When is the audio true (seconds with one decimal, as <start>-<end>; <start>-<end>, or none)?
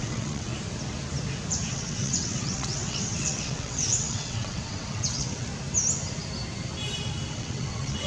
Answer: 0.5-1.7; 5.5-7.3